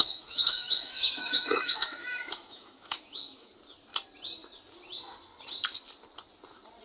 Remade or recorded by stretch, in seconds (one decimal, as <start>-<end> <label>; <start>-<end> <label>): 0.0-3.5 remade; 3.5-6.8 recorded